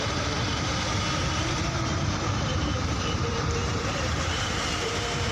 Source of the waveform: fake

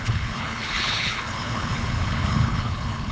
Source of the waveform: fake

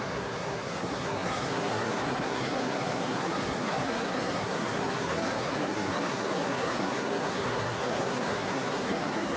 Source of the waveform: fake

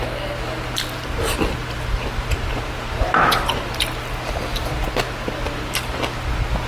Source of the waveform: real